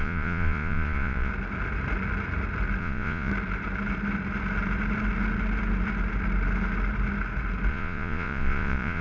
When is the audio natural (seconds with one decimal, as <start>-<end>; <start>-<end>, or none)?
1.3-2.8; 3.3-7.7